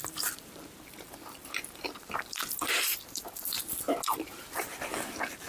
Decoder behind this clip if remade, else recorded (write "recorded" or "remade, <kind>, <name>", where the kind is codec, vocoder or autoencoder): remade, vocoder, BigVGAN v2